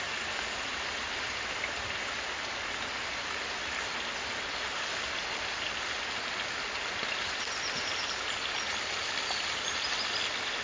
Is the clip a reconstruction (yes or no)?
no